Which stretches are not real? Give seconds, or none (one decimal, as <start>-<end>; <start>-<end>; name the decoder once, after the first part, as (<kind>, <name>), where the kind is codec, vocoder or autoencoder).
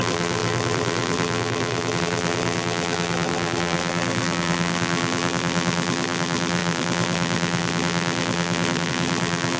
0.0-9.6 (vocoder, BigVGAN v2)